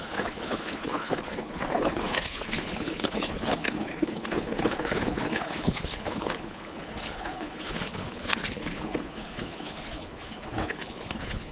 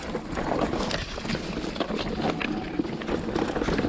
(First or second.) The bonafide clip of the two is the second